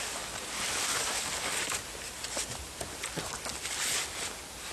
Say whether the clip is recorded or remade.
recorded